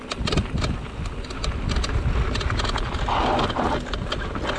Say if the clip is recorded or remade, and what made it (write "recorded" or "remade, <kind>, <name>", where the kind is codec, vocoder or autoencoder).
recorded